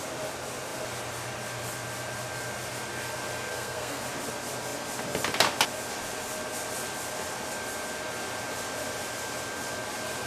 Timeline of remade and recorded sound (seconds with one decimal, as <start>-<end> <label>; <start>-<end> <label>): 0.0-3.5 recorded; 3.5-4.0 remade; 4.0-10.3 recorded